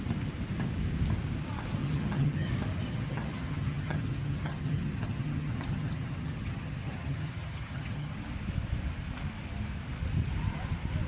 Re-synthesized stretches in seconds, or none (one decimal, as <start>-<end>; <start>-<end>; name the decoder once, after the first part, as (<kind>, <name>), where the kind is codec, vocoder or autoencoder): 1.8-2.5 (vocoder, HiFi-GAN); 2.9-8.2